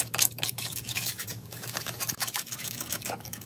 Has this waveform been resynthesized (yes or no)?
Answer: yes